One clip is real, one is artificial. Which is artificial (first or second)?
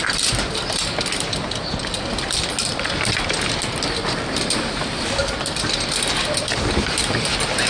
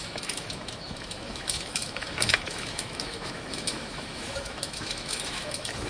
second